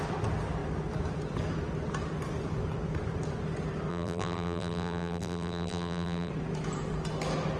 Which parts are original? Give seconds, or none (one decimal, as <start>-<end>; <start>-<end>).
0.0-3.9; 6.3-7.6